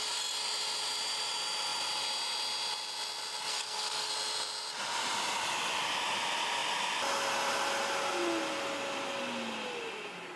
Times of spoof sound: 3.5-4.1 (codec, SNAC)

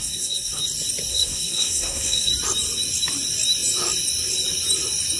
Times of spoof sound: 0.0-0.6 (codec, SNAC); 1.1-2.3

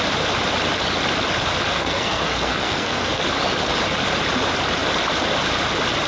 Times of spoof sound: 1.7-3.2 (codec, SNAC)

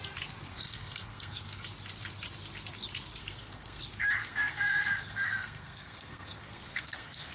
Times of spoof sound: 0.5-1.6 (codec, SNAC); 3.2-3.8; 4.2-7.3

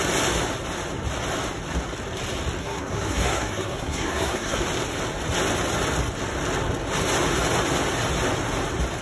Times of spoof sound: 2.6-4.6 (codec, SNAC)

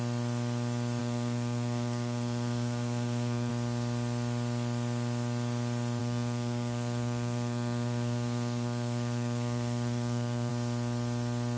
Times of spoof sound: 1.0-3.5 (codec, SNAC); 6.0-10.5

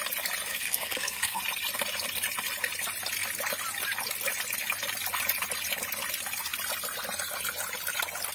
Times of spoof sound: 0.5-1.4 (codec, SNAC)